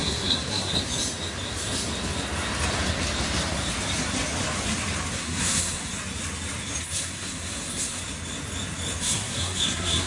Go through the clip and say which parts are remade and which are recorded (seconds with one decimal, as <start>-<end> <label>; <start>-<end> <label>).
0.0-0.7 remade; 0.7-5.1 recorded; 5.1-5.9 remade; 5.9-6.8 recorded; 6.8-8.0 remade; 8.0-9.0 recorded; 9.0-10.1 remade